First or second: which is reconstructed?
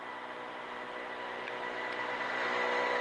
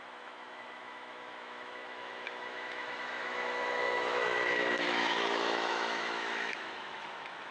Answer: second